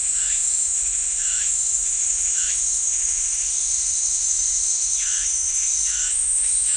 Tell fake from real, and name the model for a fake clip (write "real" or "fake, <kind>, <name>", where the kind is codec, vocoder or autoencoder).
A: fake, autoencoder, DAC-VAE